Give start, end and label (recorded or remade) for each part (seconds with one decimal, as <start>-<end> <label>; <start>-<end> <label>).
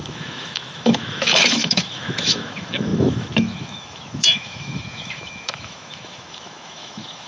0.0-7.3 remade